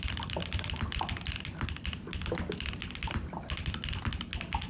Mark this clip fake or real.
real